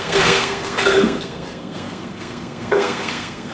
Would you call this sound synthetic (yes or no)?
yes